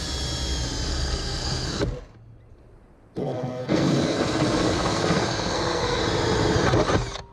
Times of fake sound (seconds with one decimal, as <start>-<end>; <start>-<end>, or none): 0.9-1.8; 3.2-6.0